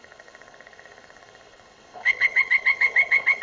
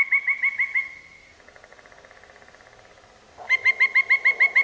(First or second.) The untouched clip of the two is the second